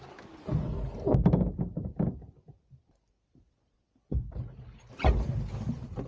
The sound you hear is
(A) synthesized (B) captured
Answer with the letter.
B